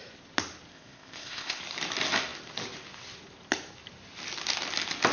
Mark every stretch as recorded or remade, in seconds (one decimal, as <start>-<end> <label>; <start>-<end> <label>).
0.0-0.7 recorded; 0.7-1.6 remade; 1.6-5.1 recorded